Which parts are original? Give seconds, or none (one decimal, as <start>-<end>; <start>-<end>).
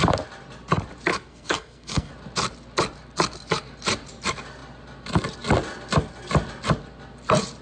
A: 0.0-1.1; 2.1-7.6